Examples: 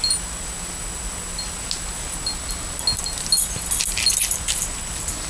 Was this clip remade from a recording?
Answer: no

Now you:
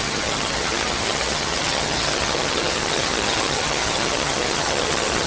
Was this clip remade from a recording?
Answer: yes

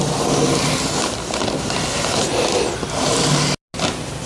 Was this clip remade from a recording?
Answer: no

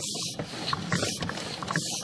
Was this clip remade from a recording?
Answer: no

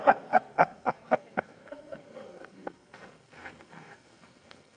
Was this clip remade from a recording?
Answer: yes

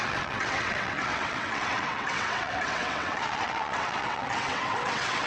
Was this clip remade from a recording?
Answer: yes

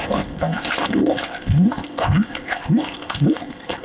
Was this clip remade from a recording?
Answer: yes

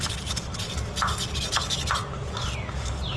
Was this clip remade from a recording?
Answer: no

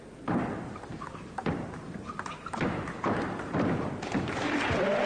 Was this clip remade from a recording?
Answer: yes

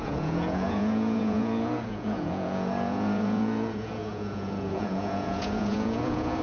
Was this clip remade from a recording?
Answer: yes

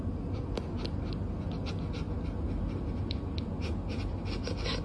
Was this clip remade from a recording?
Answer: no